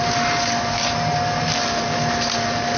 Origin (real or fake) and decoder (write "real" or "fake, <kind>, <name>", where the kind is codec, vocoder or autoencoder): real